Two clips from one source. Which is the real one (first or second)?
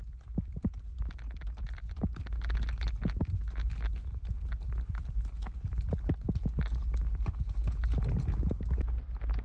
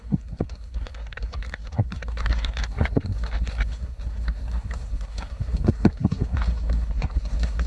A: first